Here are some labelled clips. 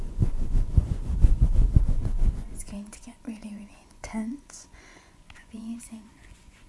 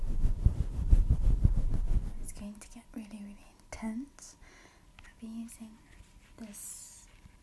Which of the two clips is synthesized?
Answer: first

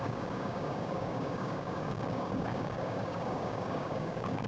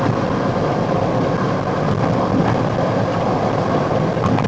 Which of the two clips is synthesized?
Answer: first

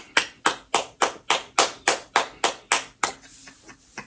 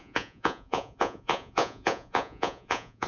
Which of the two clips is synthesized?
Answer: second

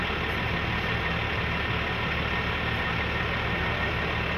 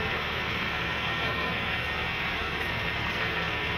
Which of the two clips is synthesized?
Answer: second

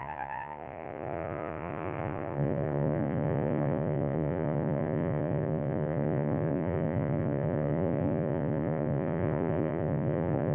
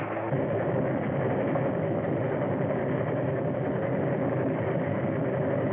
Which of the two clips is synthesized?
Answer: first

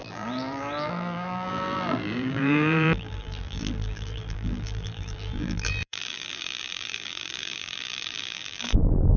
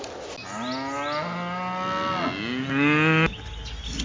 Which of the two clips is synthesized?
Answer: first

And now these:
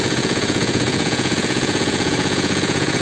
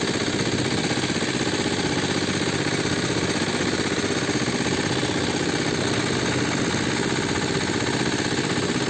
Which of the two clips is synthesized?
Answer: first